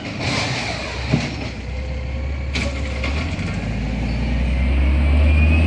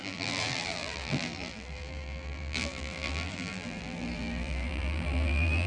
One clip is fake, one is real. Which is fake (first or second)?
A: second